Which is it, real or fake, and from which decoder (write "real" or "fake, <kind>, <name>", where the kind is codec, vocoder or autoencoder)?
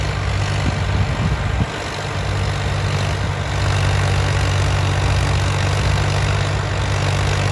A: real